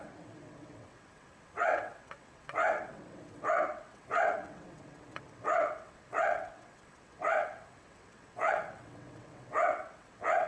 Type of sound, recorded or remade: remade